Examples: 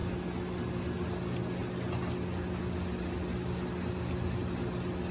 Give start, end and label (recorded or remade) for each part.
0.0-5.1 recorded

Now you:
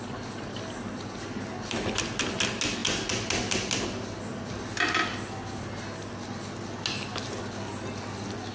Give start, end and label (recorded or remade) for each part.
0.0-8.5 recorded

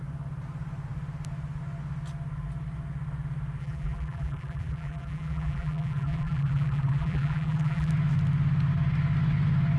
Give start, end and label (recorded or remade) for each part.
0.0-3.6 recorded; 3.6-7.9 remade; 7.9-9.8 recorded

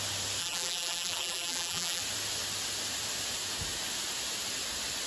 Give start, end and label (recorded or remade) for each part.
0.0-0.4 recorded; 0.4-2.0 remade; 2.0-5.1 recorded